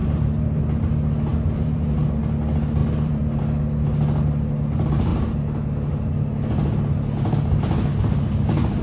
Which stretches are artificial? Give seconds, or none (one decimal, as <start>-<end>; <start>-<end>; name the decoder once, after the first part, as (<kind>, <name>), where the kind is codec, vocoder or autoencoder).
0.0-0.6 (vocoder, BigVGAN v2); 1.3-2.2; 2.8-3.4